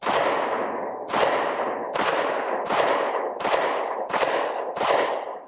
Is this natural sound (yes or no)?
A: yes